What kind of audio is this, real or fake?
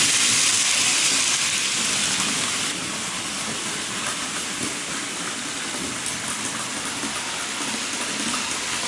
real